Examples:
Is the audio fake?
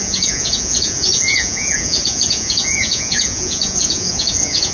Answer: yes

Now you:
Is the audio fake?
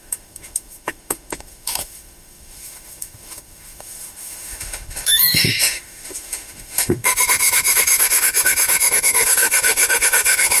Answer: yes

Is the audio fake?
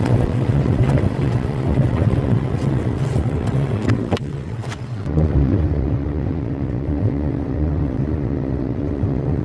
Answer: yes